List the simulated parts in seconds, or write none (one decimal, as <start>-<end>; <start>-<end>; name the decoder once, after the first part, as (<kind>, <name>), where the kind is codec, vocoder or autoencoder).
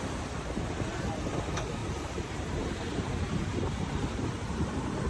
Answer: 1.8-5.1 (vocoder, BigVGAN v2)